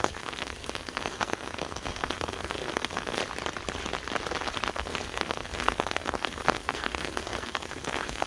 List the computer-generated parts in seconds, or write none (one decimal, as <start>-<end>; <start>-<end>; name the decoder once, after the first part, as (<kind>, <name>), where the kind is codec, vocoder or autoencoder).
0.0-3.2 (codec, SNAC); 4.7-8.3